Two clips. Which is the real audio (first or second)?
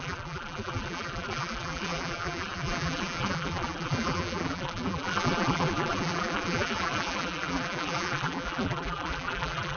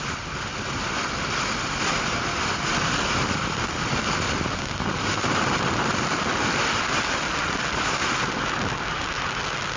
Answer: second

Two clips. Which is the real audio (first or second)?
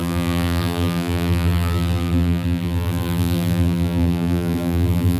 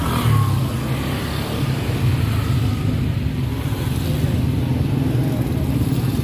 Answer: second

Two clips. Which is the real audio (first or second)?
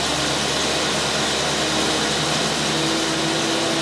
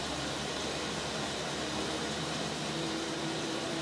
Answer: first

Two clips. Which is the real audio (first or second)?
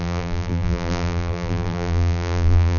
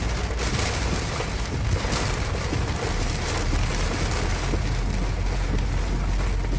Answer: second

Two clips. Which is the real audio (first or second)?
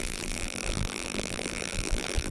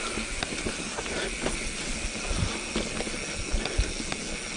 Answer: second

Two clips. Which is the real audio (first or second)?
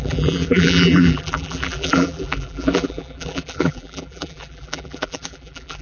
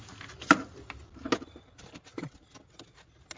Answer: second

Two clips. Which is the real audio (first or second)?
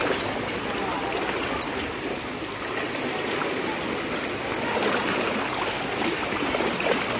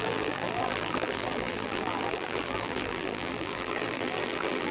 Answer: first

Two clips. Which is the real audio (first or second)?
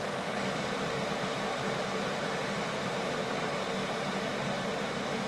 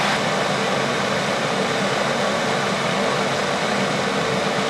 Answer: second